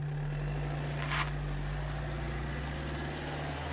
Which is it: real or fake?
real